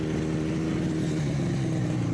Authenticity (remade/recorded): recorded